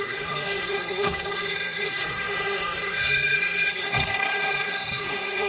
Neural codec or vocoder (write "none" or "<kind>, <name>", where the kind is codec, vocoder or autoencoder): codec, SNAC